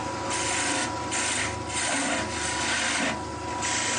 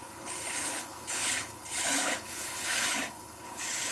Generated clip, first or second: second